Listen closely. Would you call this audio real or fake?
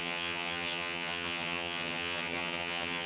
fake